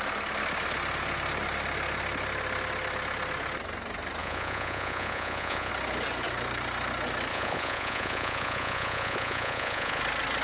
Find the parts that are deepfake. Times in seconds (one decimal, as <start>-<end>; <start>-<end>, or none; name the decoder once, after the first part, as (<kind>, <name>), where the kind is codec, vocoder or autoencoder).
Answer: 4.2-5.7 (vocoder, Vocos); 7.3-10.0